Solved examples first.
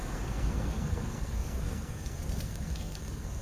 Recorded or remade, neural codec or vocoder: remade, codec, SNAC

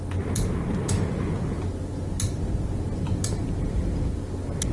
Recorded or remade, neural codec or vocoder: recorded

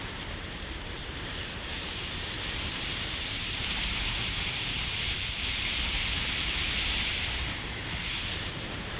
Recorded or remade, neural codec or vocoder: remade, vocoder, BigVGAN v2